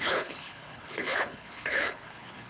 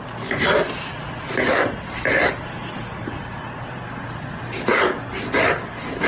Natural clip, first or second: second